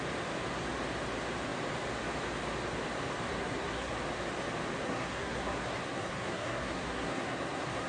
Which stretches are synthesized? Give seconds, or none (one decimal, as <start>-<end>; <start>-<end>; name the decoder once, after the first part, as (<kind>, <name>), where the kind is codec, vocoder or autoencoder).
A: 3.3-3.9 (codec, SNAC); 4.8-7.9